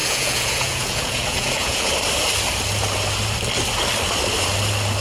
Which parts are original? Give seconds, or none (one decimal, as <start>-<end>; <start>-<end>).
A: 1.9-5.0